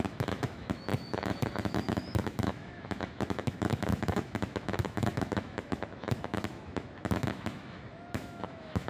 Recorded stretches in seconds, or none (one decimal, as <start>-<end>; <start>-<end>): none